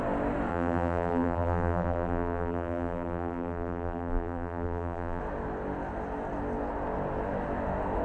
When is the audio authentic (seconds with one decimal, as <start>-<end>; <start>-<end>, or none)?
0.0-0.5; 5.2-8.0